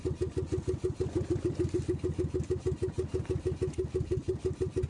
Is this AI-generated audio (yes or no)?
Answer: no